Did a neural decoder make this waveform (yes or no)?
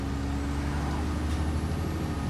no